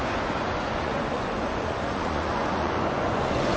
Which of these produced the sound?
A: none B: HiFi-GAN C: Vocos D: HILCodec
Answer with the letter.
C